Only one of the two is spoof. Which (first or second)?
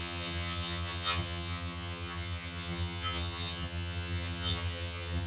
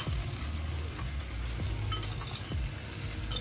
first